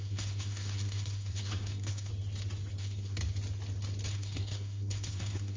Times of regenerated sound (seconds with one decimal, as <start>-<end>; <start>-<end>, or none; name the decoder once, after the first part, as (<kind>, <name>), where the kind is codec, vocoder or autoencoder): 0.0-2.1 (codec, SNAC); 2.8-3.2; 4.1-5.6